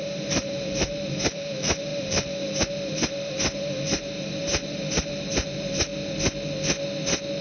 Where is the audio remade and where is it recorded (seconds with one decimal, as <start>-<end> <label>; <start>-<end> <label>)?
0.0-5.9 remade; 5.9-7.4 recorded